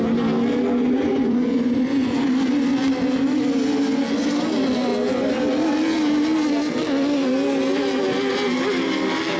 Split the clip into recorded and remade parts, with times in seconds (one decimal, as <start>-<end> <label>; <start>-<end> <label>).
0.0-0.8 recorded; 0.8-2.3 remade; 2.3-9.4 recorded